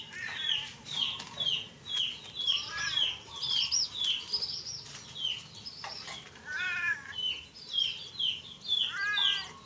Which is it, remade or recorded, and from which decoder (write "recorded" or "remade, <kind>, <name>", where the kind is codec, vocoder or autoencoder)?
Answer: recorded